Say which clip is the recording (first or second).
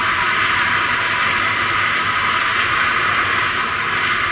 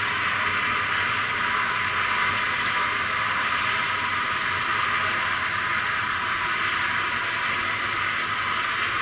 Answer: second